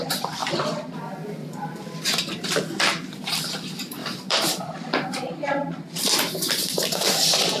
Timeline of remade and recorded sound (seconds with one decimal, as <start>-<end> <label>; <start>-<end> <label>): 0.0-0.4 recorded; 0.4-2.5 remade; 2.5-4.0 recorded; 4.0-5.8 remade; 5.8-7.6 recorded